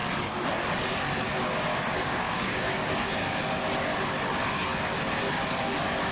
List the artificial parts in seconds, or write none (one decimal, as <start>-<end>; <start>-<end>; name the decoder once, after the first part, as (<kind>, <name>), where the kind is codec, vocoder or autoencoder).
1.9-3.4 (codec, DAC)